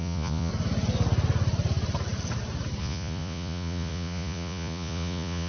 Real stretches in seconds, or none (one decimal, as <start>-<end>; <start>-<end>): 0.5-2.8